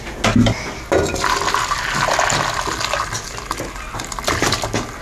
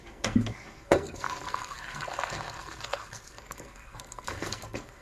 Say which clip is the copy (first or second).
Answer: second